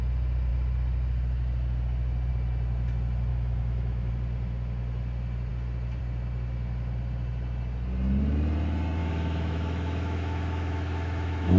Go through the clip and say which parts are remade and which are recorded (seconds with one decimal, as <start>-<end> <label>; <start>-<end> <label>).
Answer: 0.0-3.3 recorded; 3.3-4.1 remade; 4.1-9.0 recorded; 9.0-11.6 remade